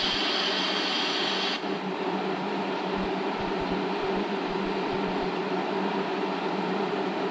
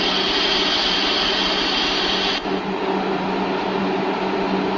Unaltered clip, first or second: second